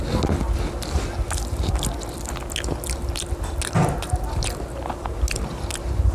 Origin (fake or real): real